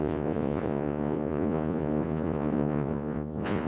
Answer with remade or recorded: remade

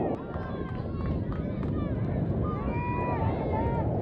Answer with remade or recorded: recorded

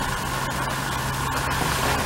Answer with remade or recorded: recorded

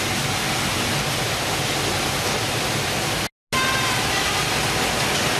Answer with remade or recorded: recorded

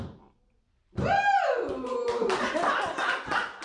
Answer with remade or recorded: recorded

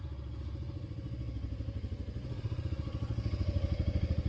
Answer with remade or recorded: recorded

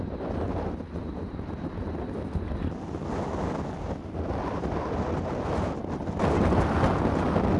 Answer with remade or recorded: recorded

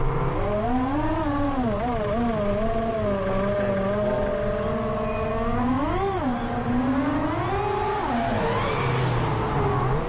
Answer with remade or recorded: recorded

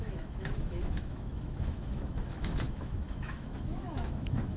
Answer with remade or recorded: remade